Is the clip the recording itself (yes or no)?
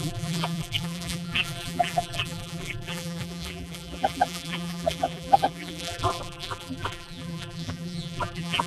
no